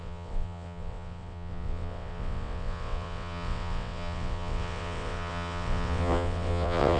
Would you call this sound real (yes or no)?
no